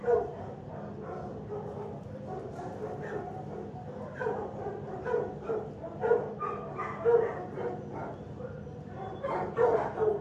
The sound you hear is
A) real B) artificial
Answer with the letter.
A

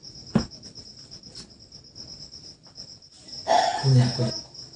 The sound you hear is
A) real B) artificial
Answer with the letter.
A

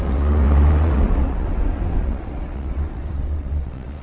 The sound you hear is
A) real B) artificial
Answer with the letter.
B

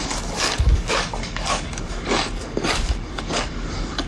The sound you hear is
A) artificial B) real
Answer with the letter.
A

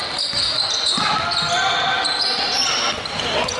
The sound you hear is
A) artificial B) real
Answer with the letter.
B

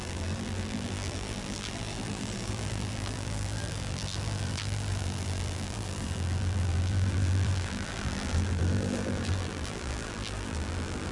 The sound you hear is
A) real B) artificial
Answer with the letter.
B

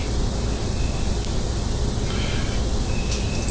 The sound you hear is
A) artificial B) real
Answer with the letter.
B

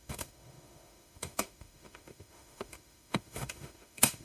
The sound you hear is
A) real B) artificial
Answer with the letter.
B